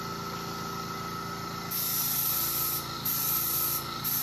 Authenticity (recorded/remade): recorded